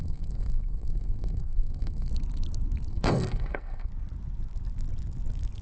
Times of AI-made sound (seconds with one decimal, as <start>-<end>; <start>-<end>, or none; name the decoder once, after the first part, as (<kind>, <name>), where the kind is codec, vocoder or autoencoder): 0.0-2.1 (codec, SNAC); 2.9-3.9